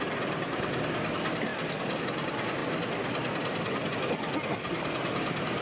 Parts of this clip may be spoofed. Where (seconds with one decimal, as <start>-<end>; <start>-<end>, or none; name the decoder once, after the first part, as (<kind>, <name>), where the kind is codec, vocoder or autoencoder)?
none